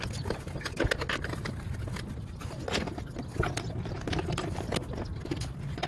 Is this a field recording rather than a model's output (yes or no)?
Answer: yes